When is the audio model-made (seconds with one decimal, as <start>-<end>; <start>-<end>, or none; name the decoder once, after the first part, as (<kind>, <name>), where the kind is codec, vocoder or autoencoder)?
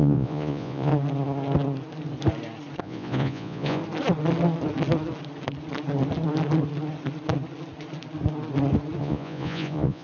0.0-0.9 (vocoder, Vocos); 2.8-3.8; 9.0-10.0